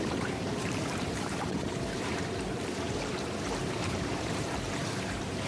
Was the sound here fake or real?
fake